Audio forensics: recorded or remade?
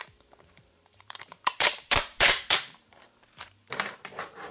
remade